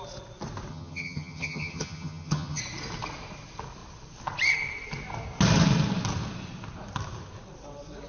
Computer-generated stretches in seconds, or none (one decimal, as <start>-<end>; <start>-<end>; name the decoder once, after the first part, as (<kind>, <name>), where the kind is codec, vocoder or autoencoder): 0.7-2.6 (vocoder, HiFi-GAN)